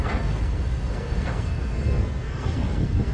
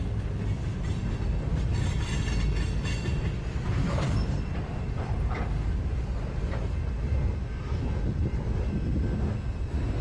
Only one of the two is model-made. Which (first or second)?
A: first